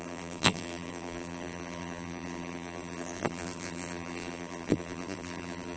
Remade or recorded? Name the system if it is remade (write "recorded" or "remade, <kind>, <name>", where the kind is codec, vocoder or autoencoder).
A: remade, vocoder, BigVGAN v2